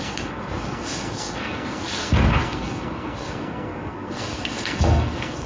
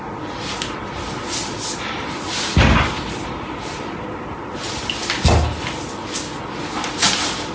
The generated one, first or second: first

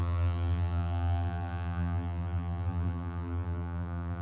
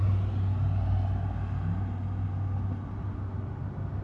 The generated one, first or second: first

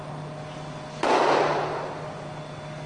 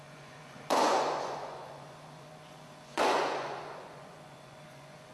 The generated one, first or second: second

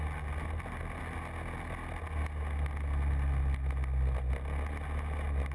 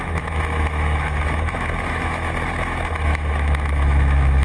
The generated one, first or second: second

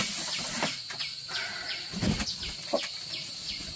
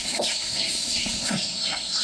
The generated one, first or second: second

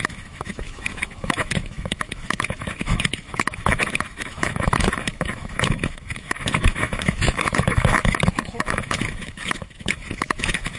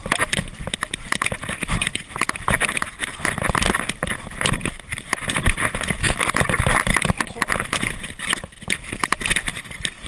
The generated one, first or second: first